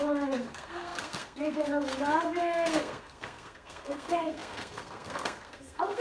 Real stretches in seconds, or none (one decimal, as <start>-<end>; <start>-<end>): none